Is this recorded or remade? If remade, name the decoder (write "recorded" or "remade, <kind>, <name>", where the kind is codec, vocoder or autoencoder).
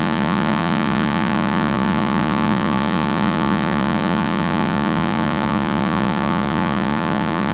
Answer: remade, vocoder, Vocos